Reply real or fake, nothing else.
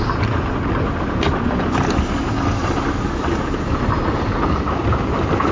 real